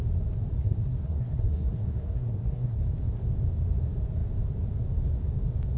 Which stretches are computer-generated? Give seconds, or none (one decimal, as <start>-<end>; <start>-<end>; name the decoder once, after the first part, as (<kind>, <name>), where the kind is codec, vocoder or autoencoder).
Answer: 0.6-2.8 (codec, SNAC)

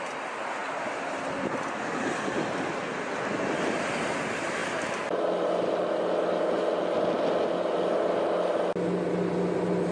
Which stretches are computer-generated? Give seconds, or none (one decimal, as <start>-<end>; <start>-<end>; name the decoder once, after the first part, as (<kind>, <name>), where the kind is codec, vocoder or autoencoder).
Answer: none

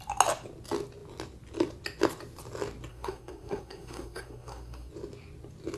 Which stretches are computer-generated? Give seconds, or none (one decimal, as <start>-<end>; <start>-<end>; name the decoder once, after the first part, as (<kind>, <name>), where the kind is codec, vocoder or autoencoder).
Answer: 2.9-4.9 (codec, SNAC)

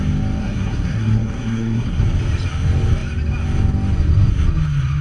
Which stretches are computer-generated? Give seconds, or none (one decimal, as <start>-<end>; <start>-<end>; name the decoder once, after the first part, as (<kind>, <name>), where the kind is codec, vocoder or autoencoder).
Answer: 0.4-2.0 (codec, SNAC)

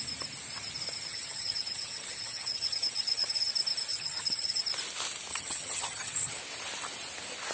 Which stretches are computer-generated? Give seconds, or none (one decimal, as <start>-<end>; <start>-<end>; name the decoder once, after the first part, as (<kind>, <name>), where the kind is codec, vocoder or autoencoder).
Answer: 1.1-3.5 (vocoder, HiFi-GAN); 3.9-4.6; 5.3-6.4

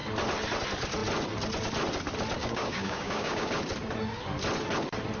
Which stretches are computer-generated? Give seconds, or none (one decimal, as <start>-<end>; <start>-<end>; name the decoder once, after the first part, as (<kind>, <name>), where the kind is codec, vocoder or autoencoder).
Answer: 2.4-3.5 (codec, DAC)

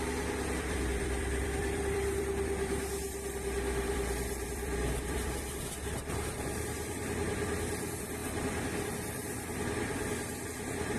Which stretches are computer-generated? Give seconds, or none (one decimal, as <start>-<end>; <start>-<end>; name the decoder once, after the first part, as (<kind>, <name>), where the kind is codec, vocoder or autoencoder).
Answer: 0.0-11.0 (vocoder, BigVGAN v2)